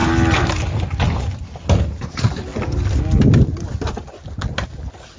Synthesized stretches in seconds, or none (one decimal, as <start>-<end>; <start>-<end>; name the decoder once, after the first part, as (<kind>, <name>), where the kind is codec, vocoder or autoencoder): none

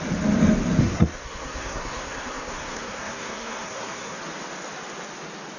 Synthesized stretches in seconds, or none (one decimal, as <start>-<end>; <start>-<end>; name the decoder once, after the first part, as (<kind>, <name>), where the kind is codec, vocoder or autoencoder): 0.8-4.2 (codec, SNAC)